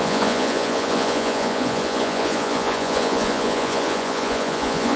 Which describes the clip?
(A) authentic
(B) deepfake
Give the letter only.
B